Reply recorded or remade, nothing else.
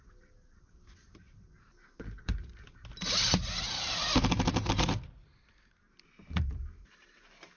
remade